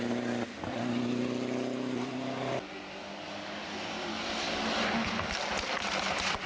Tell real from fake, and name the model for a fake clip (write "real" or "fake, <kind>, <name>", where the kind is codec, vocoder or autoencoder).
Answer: real